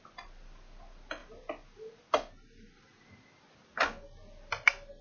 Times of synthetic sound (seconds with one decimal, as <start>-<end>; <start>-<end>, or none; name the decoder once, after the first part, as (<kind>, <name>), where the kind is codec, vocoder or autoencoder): none

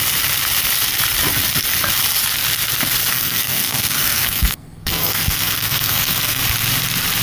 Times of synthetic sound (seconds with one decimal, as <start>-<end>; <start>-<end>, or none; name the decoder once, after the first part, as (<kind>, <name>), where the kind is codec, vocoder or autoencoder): 3.1-6.4 (codec, SNAC)

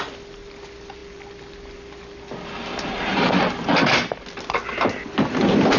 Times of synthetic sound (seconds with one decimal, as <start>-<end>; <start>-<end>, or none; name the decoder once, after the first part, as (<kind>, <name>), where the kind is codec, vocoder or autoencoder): none